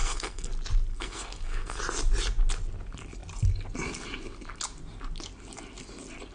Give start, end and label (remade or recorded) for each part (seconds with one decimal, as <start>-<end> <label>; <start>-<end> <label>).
0.0-0.5 remade; 0.5-0.9 recorded; 0.9-1.8 remade; 1.8-6.3 recorded